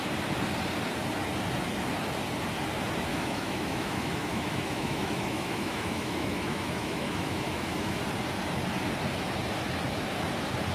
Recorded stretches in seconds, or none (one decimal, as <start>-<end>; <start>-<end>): 0.0-3.1; 8.0-10.7